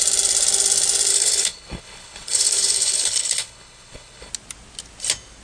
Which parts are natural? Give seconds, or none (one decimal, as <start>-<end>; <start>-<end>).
0.0-1.1; 4.3-5.4